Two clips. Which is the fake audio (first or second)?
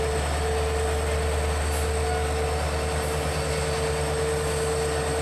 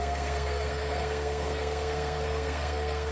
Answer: second